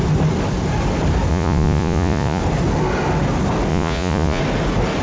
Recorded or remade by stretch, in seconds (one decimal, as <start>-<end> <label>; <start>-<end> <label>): 0.0-1.3 recorded; 1.3-2.4 remade; 2.4-3.7 recorded; 3.7-4.4 remade; 4.4-5.0 recorded